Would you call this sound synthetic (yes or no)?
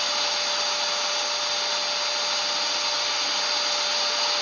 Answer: no